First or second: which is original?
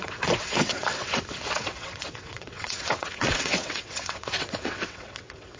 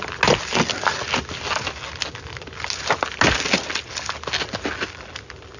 second